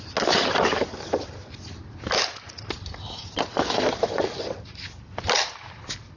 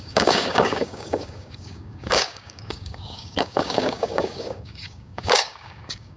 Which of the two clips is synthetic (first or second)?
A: second